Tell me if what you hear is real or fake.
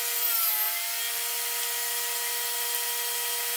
real